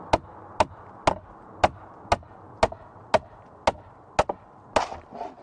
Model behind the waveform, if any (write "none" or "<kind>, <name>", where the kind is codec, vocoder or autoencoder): none